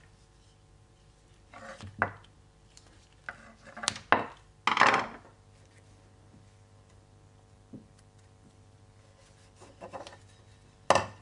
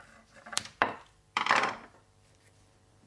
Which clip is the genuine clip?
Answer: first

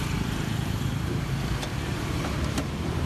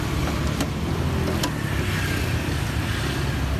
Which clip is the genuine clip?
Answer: second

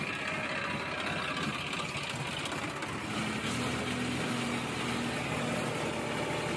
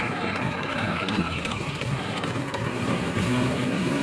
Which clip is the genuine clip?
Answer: first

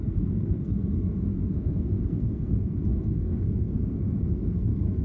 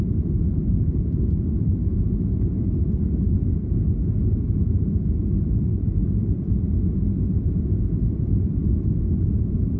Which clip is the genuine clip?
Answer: second